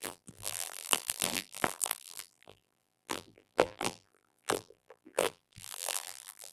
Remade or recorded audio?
remade